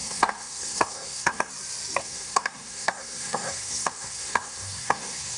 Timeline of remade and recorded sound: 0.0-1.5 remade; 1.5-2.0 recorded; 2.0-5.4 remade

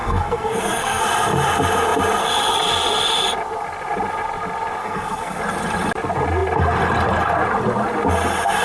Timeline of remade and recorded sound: 0.0-1.0 remade; 1.0-4.8 recorded; 4.8-5.4 remade; 5.4-8.6 recorded

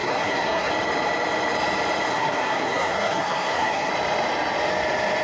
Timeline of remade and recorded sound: 0.0-0.7 remade; 0.7-2.1 recorded; 2.1-3.9 remade; 3.9-5.2 recorded

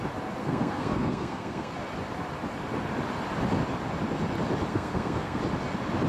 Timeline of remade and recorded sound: 0.0-0.4 recorded; 0.4-1.7 remade; 1.7-4.7 recorded; 4.7-5.4 remade; 5.4-6.1 recorded

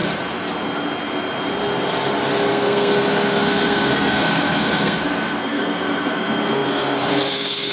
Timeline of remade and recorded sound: 0.0-2.5 recorded; 2.5-7.7 remade

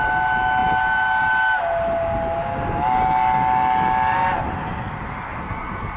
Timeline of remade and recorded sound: 0.0-5.4 recorded; 5.4-6.0 remade

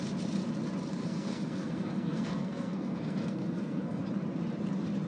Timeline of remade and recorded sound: 0.0-0.9 recorded; 0.9-4.0 remade; 4.0-5.1 recorded